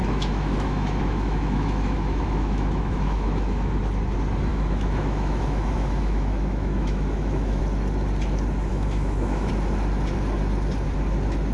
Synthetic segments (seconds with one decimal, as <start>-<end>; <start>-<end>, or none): 0.0-3.8; 4.5-7.6; 8.7-9.5